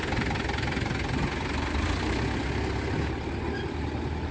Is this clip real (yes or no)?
yes